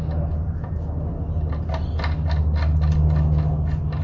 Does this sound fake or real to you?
real